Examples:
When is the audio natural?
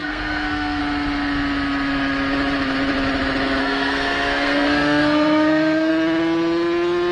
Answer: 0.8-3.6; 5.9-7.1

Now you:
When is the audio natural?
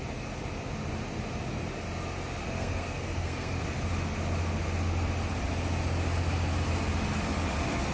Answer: 0.0-2.4; 3.6-7.9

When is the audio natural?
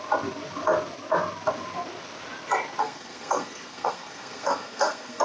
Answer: 0.0-2.8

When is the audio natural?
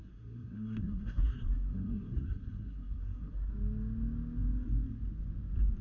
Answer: 3.5-5.8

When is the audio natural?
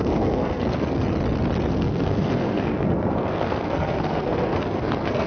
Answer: 1.0-1.7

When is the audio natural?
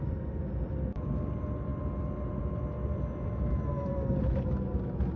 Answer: 0.0-5.2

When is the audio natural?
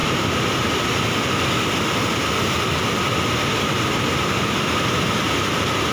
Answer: 0.0-5.9